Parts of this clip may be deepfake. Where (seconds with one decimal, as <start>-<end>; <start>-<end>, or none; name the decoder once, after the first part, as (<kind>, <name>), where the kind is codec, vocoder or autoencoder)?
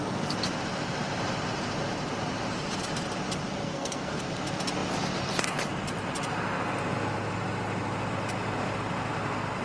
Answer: 3.6-4.2 (codec, SNAC)